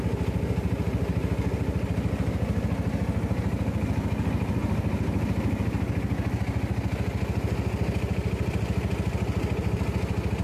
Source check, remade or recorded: recorded